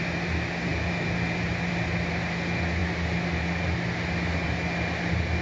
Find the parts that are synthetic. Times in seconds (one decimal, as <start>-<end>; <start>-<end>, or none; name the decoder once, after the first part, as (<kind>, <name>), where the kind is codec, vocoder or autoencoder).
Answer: none